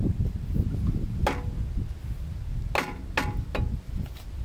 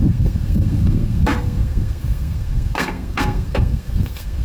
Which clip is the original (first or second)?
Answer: first